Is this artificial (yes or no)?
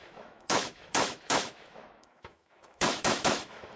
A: yes